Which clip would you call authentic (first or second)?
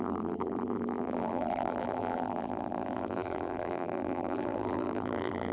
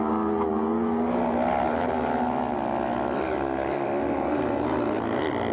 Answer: second